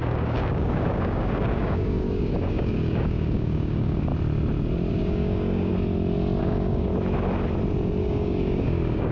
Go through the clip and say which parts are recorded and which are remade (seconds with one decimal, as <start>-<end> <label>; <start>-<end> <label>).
0.0-4.1 remade; 4.1-4.9 recorded; 4.9-5.7 remade; 5.7-6.4 recorded; 6.4-6.9 remade; 6.9-8.0 recorded; 8.0-9.1 remade